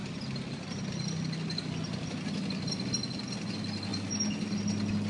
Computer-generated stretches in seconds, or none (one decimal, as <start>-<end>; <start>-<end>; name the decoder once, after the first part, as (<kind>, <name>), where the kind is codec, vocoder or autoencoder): none